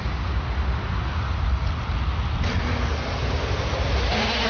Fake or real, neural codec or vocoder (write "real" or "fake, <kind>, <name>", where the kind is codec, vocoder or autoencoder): real